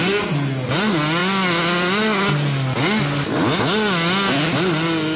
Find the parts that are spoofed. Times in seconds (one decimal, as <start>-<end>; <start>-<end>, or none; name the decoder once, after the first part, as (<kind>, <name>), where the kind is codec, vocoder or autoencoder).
none